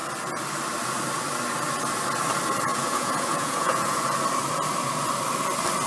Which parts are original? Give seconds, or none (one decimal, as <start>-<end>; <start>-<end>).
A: 0.0-2.7; 4.0-5.9